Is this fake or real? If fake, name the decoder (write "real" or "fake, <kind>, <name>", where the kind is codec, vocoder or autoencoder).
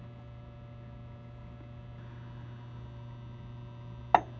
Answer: real